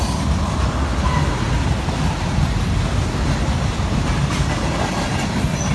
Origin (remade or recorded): recorded